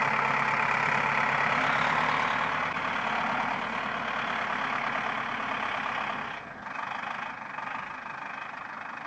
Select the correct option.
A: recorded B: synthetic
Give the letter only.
A